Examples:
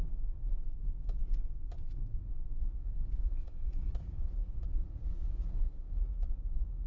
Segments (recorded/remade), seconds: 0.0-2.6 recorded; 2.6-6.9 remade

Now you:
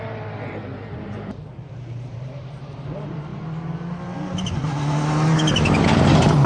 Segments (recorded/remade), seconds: 0.0-3.3 remade; 3.3-6.5 recorded

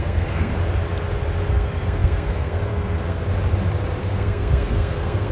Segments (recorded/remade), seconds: 0.0-0.5 remade; 0.5-1.5 recorded; 1.5-3.2 remade; 3.2-4.0 recorded; 4.0-5.3 remade

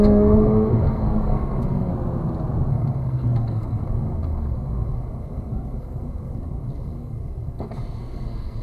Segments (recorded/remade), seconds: 0.0-1.9 remade; 1.9-2.7 recorded; 2.7-8.6 remade

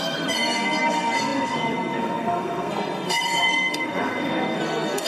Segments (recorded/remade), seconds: 0.0-5.1 remade